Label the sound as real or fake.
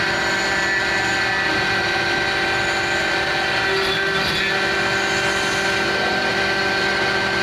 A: real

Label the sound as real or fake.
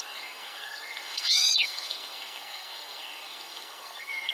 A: fake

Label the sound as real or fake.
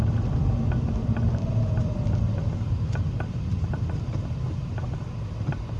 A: real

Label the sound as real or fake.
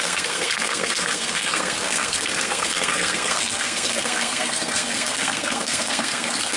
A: fake